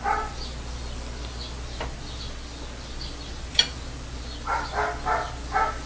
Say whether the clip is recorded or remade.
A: recorded